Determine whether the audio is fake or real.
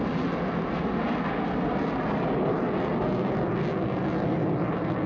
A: real